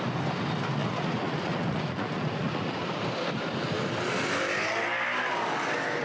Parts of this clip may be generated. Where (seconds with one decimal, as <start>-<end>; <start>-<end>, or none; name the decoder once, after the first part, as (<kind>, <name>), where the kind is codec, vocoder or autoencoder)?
0.8-2.8 (vocoder, Vocos)